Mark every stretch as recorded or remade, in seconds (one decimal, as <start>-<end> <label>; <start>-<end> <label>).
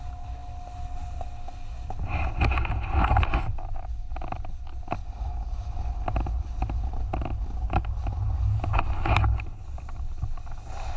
0.0-11.0 recorded